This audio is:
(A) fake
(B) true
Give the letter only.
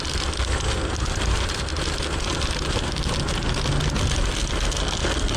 B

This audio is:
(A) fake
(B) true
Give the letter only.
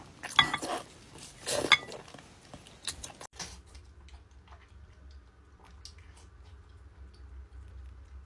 B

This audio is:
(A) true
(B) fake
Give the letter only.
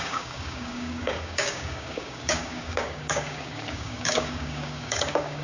B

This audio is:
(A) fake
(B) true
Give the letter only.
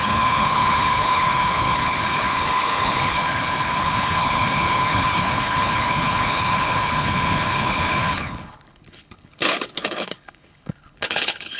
A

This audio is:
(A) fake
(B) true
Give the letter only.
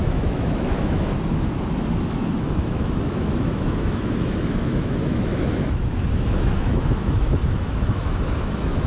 A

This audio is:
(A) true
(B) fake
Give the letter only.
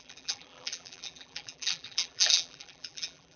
B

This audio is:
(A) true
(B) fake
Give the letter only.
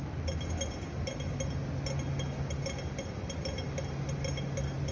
A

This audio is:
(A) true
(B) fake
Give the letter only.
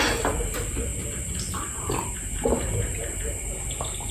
A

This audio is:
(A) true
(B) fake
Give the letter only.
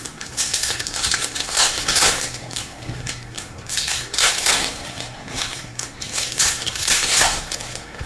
B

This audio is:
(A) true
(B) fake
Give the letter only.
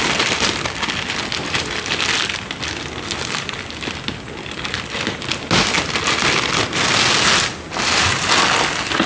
A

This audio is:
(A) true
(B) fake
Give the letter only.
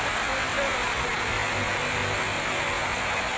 A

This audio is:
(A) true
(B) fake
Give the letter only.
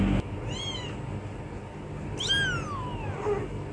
A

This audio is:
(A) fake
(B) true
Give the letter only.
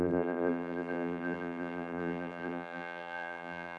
A